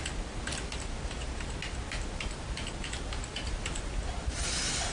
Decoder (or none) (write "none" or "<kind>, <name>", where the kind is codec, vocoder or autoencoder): none